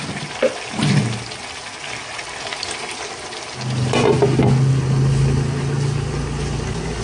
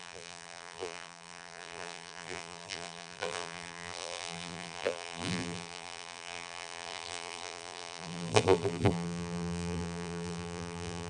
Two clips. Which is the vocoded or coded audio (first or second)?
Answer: second